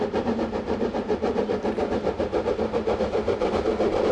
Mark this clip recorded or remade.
remade